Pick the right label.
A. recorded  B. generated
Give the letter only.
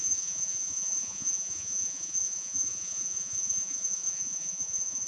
B